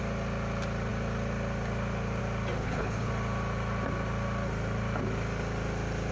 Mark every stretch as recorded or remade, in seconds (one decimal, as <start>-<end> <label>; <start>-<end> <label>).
0.0-2.6 recorded; 2.6-3.1 remade; 3.1-6.1 recorded